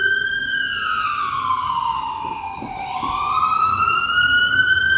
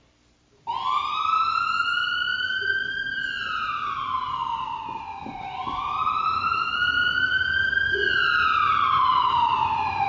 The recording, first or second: second